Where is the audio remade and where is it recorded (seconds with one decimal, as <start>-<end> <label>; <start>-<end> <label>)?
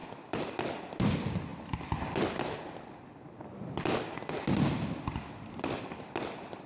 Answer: 0.0-6.7 recorded